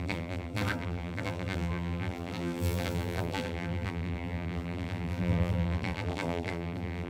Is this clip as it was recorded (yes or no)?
no